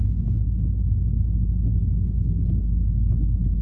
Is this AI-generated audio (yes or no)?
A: yes